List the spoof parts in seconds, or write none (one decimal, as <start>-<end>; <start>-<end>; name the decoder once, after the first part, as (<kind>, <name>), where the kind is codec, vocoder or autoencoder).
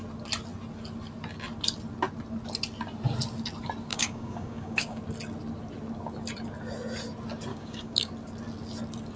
3.9-5.0 (codec, DAC); 7.5-8.1